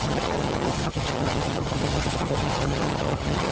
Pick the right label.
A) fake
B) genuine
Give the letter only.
A